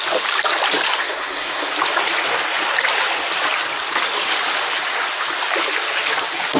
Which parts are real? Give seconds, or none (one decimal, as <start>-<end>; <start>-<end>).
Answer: 0.0-1.0; 1.7-6.6